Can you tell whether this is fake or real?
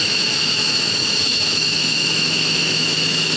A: fake